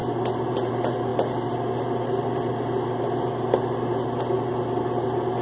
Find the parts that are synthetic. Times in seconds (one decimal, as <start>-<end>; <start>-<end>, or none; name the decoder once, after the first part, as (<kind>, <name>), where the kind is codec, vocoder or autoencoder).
none